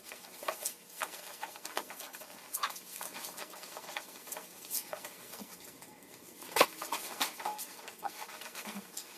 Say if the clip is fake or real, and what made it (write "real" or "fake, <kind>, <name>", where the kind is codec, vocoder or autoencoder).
fake, codec, SNAC